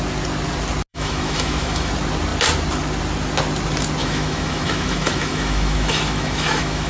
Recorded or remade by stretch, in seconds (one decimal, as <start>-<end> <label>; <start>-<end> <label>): 0.0-0.9 recorded; 0.9-1.9 remade; 1.9-4.0 recorded; 4.0-6.9 remade